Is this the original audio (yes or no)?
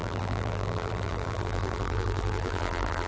no